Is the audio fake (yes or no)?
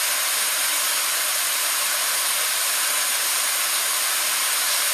no